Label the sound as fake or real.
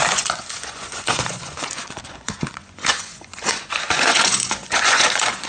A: fake